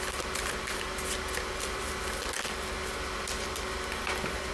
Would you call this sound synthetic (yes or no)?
no